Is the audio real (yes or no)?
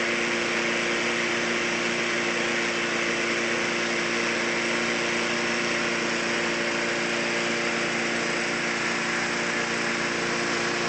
yes